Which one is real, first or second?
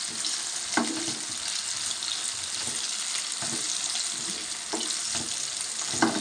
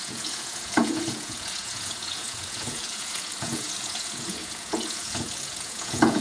first